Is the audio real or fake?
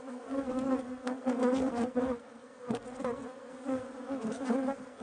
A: fake